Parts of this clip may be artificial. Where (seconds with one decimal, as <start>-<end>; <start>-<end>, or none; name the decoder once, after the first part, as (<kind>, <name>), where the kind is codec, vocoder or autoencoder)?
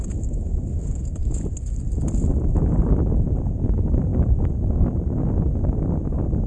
none